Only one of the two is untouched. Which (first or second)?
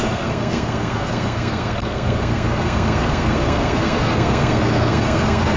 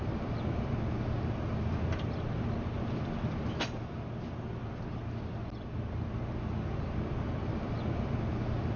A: second